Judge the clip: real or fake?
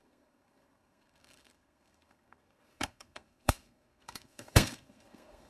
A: fake